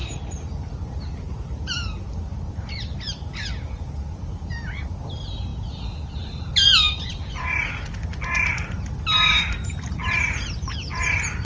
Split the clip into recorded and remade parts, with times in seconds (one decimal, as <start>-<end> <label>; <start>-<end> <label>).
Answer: 0.0-11.4 recorded